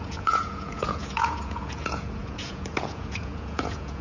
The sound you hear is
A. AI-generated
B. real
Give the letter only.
A